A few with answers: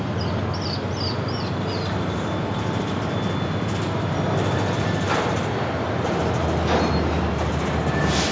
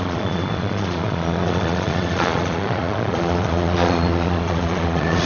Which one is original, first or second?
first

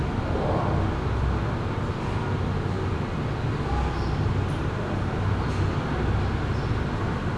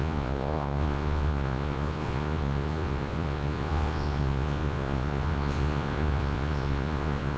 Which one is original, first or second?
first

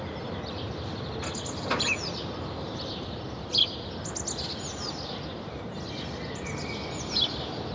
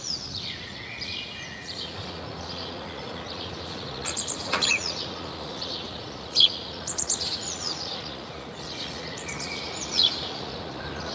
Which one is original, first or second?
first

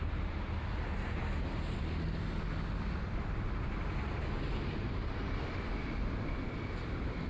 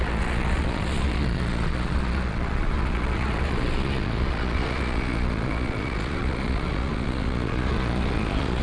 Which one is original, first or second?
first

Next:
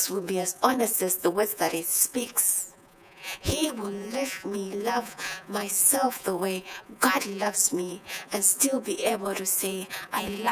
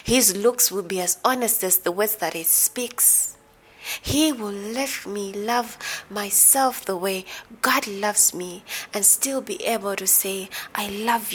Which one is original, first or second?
second